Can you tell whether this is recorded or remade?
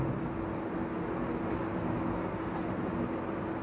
recorded